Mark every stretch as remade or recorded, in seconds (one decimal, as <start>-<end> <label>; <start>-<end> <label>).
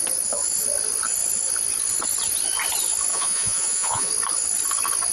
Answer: 0.0-3.1 recorded; 3.1-4.1 remade; 4.1-5.1 recorded